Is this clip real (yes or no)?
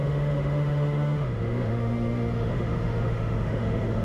no